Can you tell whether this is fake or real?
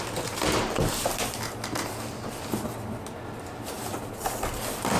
real